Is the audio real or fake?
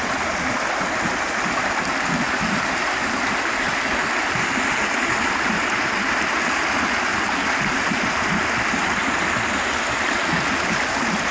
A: real